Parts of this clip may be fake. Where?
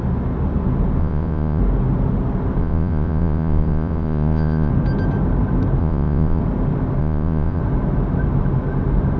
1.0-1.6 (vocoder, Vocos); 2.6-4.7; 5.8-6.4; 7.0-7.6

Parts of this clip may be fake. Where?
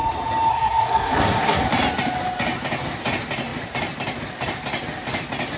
0.5-1.6 (codec, SNAC)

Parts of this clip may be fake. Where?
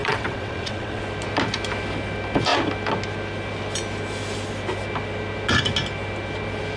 0.0-1.0 (vocoder, WaveNeXt)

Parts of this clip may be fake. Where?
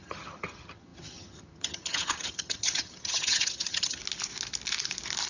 0.0-4.0 (vocoder, HiFi-GAN)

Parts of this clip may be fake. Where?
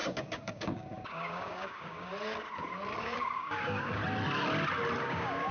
0.0-2.1 (codec, DAC); 3.0-4.0; 5.0-5.5